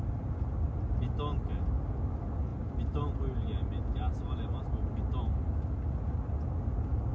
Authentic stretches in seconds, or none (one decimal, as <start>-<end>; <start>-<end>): 0.0-7.1